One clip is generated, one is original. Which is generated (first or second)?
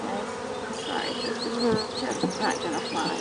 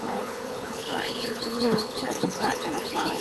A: second